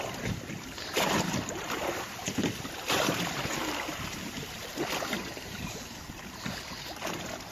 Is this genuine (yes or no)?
yes